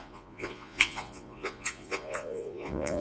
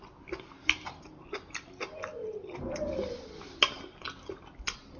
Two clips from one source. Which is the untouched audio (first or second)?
second